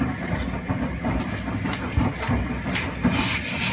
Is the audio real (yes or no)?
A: yes